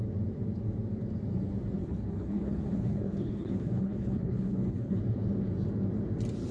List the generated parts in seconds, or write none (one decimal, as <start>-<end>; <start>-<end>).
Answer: 1.8-5.0